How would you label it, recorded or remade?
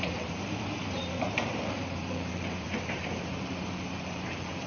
remade